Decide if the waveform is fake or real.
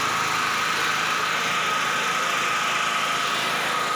real